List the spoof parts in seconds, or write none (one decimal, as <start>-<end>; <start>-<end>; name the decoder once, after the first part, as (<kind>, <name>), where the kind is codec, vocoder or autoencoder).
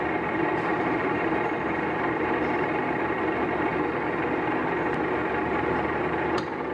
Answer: 0.7-3.2 (vocoder, BigVGAN v2)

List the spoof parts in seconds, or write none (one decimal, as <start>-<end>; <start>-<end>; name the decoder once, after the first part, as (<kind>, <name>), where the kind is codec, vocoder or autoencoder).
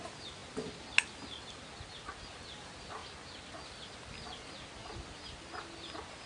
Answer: none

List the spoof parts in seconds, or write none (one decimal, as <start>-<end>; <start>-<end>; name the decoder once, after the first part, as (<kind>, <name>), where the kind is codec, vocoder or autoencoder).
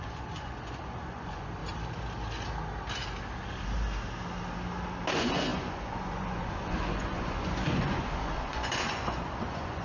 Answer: 0.0-1.6 (vocoder, Vocos); 5.1-9.8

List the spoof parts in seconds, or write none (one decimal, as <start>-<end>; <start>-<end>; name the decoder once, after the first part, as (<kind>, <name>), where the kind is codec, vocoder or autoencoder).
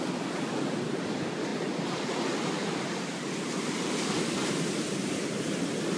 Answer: none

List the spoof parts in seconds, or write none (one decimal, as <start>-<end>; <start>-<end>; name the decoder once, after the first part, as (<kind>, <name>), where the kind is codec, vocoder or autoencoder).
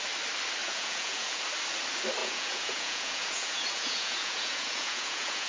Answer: 0.6-1.4 (vocoder, Vocos); 2.2-5.5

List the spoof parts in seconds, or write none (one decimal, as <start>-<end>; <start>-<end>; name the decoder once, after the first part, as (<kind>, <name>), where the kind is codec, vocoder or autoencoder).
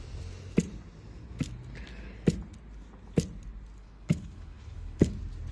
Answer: 3.8-5.1 (codec, HILCodec)